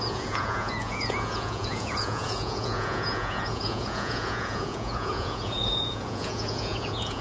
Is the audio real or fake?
fake